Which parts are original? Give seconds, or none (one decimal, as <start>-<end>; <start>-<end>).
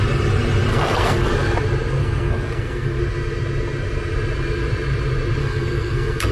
0.0-0.7; 1.3-2.0; 3.0-5.4